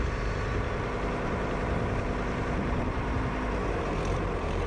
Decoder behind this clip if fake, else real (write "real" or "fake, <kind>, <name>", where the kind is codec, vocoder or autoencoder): fake, vocoder, BigVGAN v2